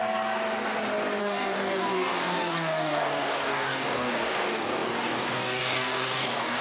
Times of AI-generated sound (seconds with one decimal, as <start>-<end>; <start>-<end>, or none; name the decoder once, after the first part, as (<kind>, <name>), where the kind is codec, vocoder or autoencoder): 1.2-6.6 (codec, DAC)